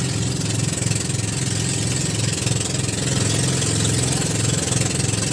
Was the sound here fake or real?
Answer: real